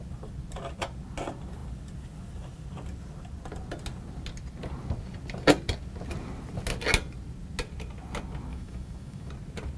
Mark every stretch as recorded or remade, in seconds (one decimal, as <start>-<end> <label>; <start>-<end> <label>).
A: 0.0-8.5 recorded; 8.5-9.3 remade; 9.3-9.8 recorded